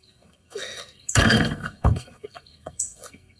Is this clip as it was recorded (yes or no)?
no